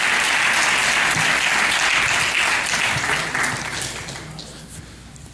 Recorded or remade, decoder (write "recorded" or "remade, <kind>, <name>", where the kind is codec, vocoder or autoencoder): recorded